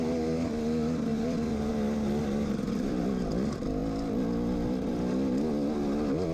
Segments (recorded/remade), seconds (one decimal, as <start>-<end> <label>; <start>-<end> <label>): 0.0-1.1 recorded; 1.1-1.7 remade; 1.7-2.2 recorded; 2.2-3.0 remade; 3.0-6.3 recorded